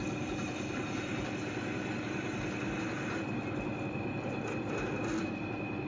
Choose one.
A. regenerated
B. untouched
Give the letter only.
B